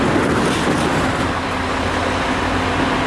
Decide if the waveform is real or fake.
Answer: real